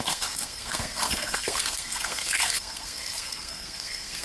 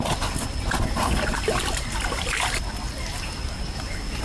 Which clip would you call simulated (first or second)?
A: first